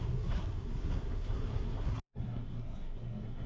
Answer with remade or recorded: remade